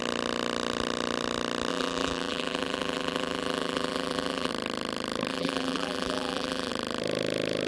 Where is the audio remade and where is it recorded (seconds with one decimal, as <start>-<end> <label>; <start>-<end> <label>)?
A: 0.0-1.7 recorded; 1.7-4.5 remade; 4.5-5.3 recorded; 5.3-6.7 remade; 6.7-7.7 recorded